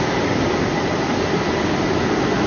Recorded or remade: recorded